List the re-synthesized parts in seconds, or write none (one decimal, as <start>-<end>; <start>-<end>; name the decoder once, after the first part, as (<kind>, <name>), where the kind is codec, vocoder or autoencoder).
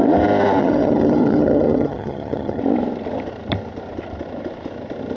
0.6-2.6 (vocoder, HiFi-GAN)